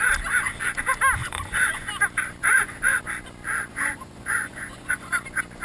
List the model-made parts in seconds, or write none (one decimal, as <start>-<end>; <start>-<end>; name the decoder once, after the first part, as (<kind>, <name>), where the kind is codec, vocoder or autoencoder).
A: 1.2-1.9 (vocoder, Vocos); 2.4-3.0; 3.7-5.1

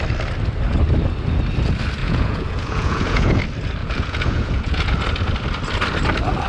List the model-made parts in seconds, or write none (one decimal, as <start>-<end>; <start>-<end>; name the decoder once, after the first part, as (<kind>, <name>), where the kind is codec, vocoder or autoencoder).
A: 2.0-3.4 (vocoder, Vocos); 3.8-4.9

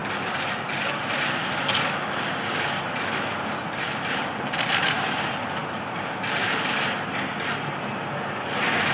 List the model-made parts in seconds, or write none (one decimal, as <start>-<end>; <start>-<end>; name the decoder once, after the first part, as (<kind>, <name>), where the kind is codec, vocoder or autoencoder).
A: none

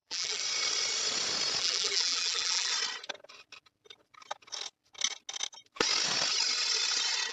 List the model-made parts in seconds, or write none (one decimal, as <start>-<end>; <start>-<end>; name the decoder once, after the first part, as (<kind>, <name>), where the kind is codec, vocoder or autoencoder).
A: 0.0-0.4 (vocoder, BigVGAN v2); 1.6-2.7

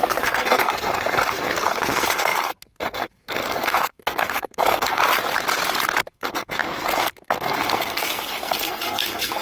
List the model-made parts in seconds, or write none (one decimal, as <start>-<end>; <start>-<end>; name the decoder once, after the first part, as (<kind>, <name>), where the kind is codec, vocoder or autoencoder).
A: 0.0-5.0 (codec, SNAC); 6.1-9.4